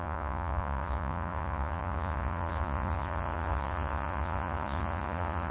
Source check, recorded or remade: remade